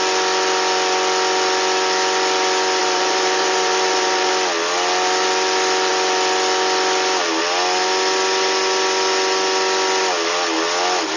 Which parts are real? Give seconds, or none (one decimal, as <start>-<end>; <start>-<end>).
0.0-2.8; 4.3-11.2